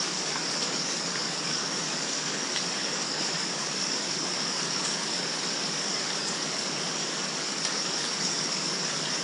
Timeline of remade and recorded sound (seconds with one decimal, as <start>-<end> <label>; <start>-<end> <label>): 0.0-9.2 remade